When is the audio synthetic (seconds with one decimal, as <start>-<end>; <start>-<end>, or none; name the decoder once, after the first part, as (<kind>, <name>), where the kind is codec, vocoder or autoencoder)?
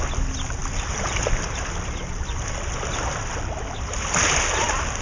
none